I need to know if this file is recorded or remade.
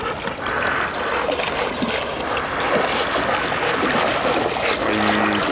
recorded